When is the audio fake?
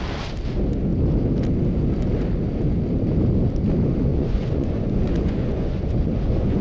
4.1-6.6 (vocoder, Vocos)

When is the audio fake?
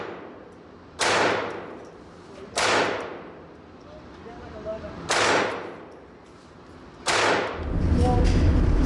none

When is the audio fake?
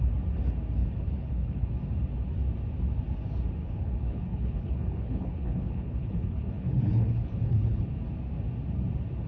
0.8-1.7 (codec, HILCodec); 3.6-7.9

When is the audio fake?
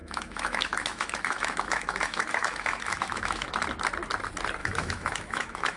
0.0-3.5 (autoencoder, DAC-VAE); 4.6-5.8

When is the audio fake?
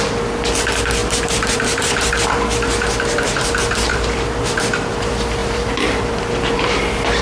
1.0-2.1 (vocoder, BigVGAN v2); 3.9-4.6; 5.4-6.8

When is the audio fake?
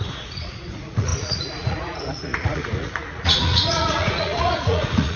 0.0-5.2 (vocoder, Vocos)